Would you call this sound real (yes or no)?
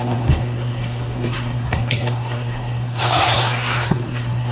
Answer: no